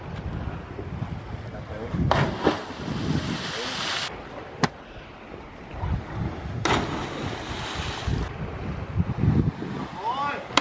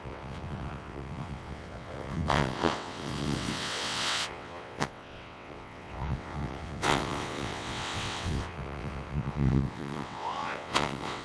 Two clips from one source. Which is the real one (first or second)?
first